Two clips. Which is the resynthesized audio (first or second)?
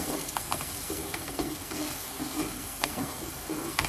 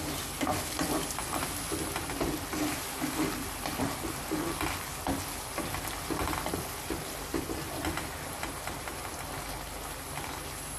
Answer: first